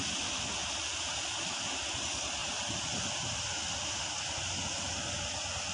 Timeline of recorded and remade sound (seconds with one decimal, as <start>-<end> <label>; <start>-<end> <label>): 0.0-5.7 recorded